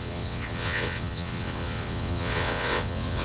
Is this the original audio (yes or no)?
no